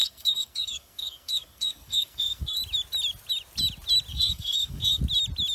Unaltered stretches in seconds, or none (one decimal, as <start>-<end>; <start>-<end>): 2.6-4.1; 5.0-5.5